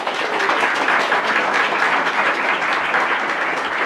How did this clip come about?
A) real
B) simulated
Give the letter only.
A